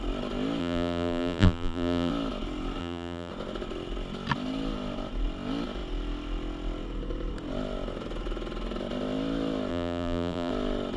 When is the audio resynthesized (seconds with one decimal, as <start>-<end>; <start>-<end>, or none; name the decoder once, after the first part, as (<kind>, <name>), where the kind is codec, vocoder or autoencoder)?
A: 0.6-2.1 (vocoder, BigVGAN v2); 2.8-3.3; 9.7-10.5